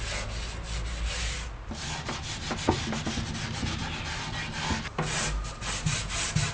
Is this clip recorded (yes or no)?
yes